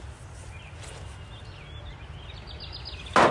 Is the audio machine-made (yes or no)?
no